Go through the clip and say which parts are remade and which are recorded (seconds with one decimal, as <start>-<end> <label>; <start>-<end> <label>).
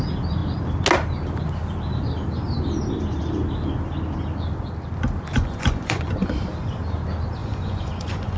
0.0-5.3 recorded; 5.3-6.1 remade; 6.1-7.4 recorded; 7.4-8.4 remade